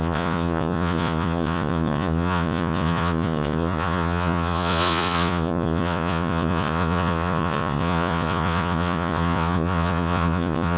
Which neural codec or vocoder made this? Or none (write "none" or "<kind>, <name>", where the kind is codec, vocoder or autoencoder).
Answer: vocoder, Vocos